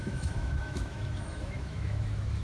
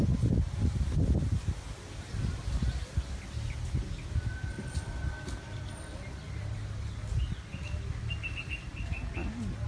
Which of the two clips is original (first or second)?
second